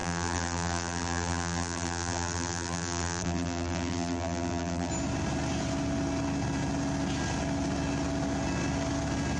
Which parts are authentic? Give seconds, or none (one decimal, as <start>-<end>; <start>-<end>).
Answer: 4.9-9.4